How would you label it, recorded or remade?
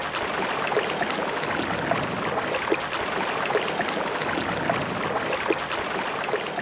recorded